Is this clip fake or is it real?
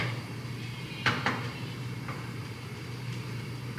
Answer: fake